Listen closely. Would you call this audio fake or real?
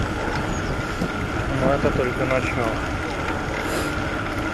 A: real